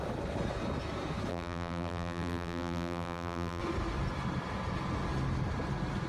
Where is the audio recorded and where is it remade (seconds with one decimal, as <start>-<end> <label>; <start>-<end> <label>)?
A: 0.0-1.3 recorded; 1.3-3.6 remade; 3.6-6.1 recorded